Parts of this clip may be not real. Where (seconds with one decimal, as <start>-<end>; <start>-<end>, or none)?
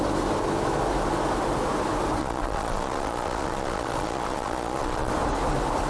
2.2-5.1